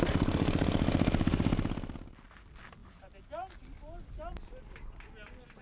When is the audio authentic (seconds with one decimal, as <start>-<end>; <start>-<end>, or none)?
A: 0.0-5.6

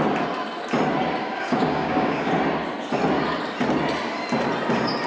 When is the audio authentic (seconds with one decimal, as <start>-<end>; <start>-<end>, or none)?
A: 0.0-1.2; 2.3-5.1

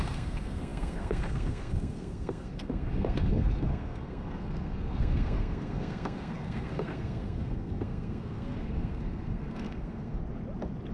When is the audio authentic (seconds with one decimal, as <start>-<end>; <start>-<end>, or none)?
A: 10.2-10.9

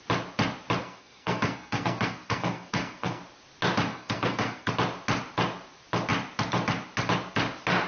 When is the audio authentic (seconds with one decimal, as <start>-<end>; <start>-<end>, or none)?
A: 0.0-0.8; 3.2-3.9; 4.7-7.9